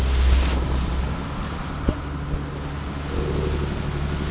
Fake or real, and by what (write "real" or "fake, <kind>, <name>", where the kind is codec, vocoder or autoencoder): real